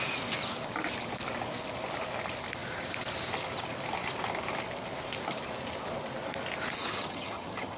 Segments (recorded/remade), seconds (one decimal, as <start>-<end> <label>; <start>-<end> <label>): 0.0-6.8 recorded; 6.8-7.8 remade

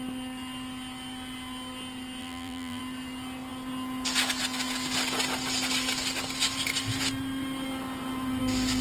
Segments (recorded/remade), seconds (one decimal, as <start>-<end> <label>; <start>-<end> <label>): 0.0-2.2 recorded; 2.2-2.8 remade; 2.8-8.8 recorded